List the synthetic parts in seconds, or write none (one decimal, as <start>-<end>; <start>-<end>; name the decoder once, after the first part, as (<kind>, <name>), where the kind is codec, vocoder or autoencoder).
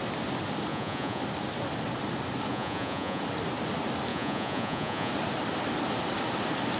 0.7-1.2 (vocoder, Vocos); 2.5-3.2; 4.1-5.1